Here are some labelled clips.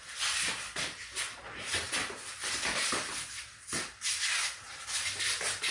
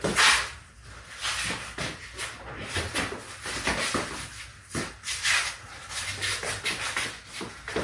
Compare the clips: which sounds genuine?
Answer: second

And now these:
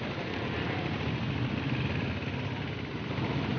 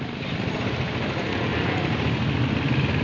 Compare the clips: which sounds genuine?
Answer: second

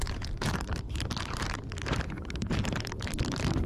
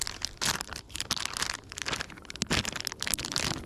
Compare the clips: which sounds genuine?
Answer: second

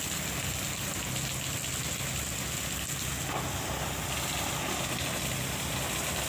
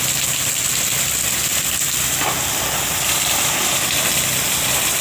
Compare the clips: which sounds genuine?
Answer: first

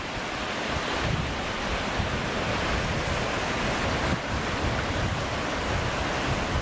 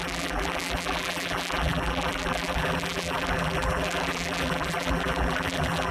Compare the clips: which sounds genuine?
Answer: first